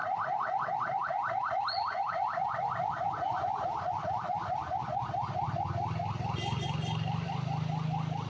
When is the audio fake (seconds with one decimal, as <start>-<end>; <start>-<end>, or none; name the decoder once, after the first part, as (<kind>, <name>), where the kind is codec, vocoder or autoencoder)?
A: none